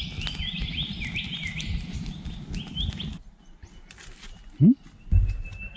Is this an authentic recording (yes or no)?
yes